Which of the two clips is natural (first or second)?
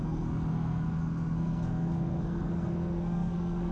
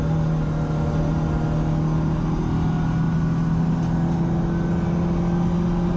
second